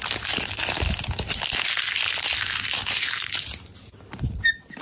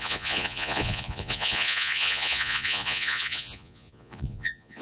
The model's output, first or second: second